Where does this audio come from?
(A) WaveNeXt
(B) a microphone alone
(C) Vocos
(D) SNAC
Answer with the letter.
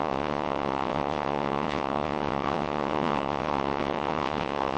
A